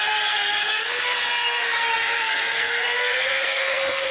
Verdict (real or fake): fake